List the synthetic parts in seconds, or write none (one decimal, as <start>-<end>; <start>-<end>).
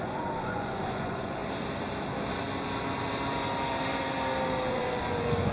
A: 0.0-1.4; 4.7-5.5